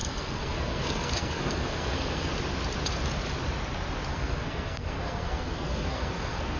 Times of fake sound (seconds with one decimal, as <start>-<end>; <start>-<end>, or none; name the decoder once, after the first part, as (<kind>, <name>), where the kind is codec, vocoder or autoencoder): 0.0-2.3 (codec, SNAC); 4.1-6.6